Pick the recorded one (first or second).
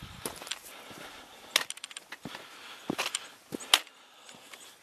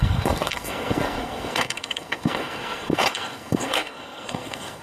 first